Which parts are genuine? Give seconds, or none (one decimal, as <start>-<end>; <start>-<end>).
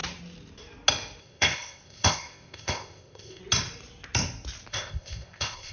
0.0-1.2; 3.4-4.7